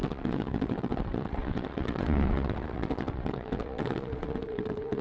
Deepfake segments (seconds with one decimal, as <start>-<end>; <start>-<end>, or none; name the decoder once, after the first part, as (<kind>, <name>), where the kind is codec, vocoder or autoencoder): 0.0-5.0 (vocoder, WaveNeXt)